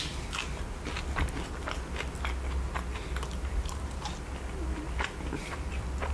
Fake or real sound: real